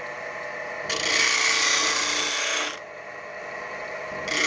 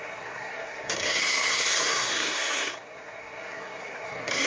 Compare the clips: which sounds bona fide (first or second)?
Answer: first